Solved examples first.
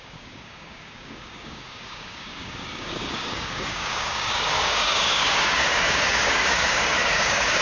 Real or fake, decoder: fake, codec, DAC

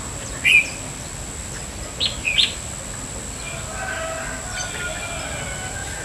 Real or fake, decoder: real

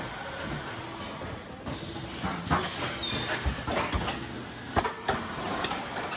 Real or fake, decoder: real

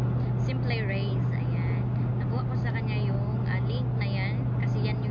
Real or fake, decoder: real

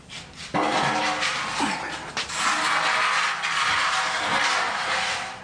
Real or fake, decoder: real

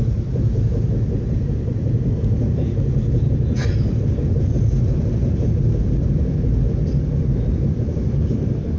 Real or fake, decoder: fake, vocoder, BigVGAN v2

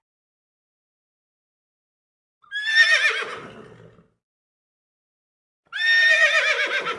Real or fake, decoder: real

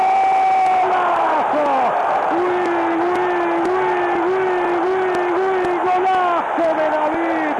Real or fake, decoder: real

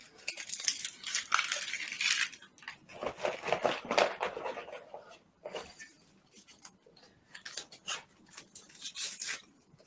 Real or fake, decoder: real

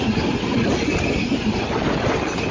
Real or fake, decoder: real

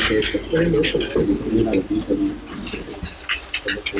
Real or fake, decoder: real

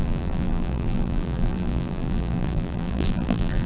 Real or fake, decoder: fake, vocoder, BigVGAN v2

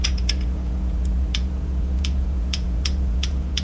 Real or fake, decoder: fake, vocoder, Vocos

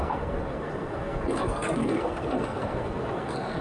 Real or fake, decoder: fake, codec, SNAC